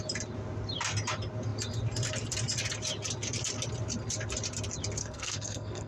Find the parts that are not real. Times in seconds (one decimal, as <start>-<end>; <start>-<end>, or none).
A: 5.0-5.9